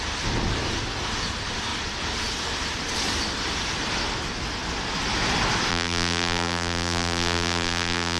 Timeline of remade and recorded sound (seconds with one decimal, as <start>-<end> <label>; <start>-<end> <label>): 0.0-5.7 recorded; 5.7-8.2 remade